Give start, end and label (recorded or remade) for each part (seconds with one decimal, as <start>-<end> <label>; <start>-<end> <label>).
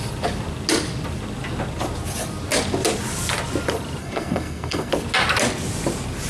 0.0-4.0 recorded; 4.0-4.9 remade; 4.9-6.3 recorded